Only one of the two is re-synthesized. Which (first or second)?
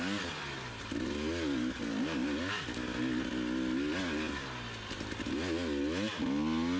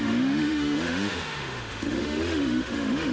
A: second